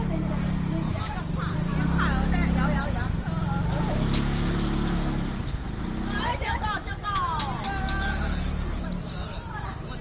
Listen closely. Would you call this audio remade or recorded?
recorded